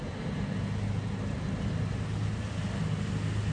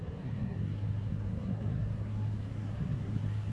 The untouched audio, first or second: first